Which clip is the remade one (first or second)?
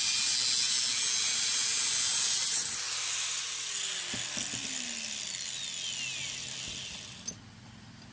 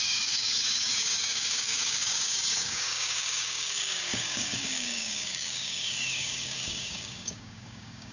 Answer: second